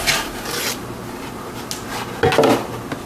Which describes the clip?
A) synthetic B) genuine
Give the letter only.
B